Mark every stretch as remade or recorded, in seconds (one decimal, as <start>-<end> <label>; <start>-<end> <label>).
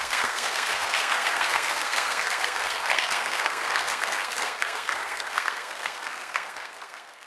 0.0-7.3 remade